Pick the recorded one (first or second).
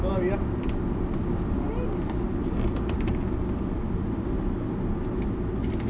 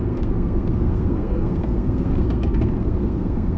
first